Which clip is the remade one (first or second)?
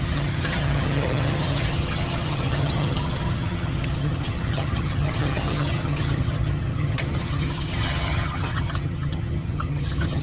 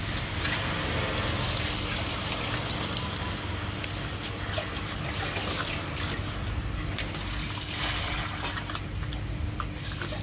first